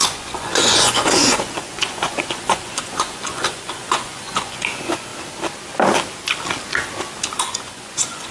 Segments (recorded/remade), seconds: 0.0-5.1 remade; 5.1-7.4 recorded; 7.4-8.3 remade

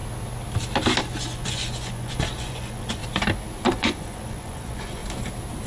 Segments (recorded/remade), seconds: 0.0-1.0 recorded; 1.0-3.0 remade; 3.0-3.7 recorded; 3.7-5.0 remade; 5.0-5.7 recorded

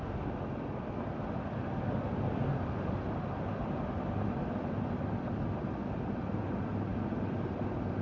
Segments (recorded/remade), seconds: 0.0-8.0 recorded

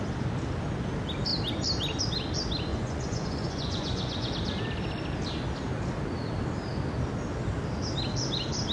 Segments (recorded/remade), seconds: 0.0-2.7 recorded; 2.7-4.3 remade; 4.3-8.7 recorded